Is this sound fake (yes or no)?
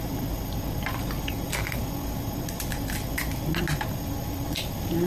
no